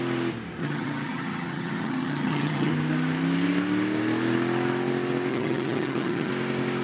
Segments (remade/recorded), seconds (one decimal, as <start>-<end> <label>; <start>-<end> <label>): 0.0-0.6 recorded; 0.6-2.7 remade; 2.7-5.3 recorded; 5.3-6.3 remade; 6.3-6.8 recorded